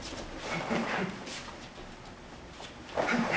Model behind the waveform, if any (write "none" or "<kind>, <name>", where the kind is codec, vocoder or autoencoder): none